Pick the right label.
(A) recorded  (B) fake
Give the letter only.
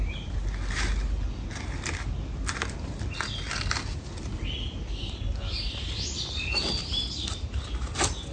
A